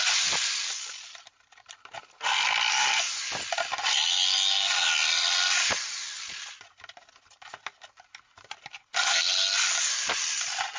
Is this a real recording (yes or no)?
yes